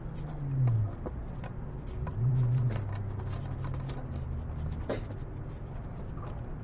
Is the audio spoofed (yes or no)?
no